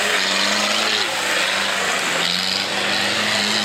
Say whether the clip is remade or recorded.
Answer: recorded